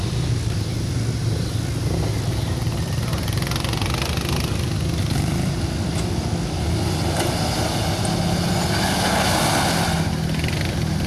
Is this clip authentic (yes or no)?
yes